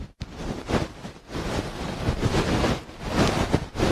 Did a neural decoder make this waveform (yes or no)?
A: no